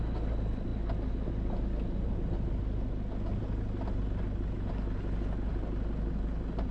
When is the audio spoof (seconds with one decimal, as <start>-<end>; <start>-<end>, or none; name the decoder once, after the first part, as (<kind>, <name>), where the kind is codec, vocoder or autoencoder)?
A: none